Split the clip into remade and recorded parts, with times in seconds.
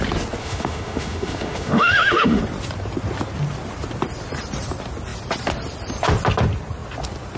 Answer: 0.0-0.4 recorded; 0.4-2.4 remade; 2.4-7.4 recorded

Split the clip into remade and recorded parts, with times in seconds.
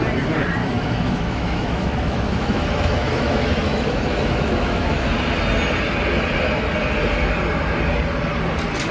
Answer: 0.0-0.6 recorded; 0.6-5.1 remade; 5.1-8.9 recorded